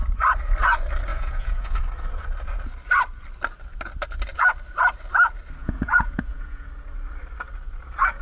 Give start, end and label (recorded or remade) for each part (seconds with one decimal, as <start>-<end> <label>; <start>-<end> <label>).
0.0-1.1 recorded; 1.1-1.8 remade; 1.8-5.6 recorded; 5.6-6.7 remade; 6.7-8.2 recorded